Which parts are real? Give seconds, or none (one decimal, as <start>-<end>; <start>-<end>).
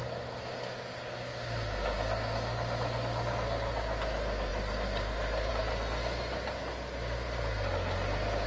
0.0-8.5